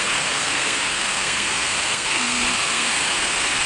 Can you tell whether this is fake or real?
fake